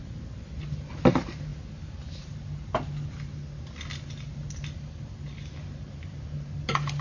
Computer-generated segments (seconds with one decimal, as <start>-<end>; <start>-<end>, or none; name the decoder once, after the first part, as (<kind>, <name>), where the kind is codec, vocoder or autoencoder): none